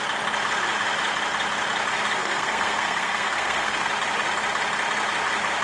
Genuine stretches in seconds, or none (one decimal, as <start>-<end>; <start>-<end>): 0.0-2.2; 3.9-5.6